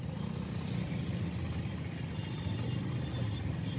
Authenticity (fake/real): real